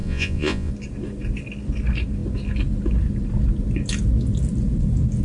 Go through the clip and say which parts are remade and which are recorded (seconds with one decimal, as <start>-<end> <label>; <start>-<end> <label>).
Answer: 0.0-0.7 remade; 0.7-5.2 recorded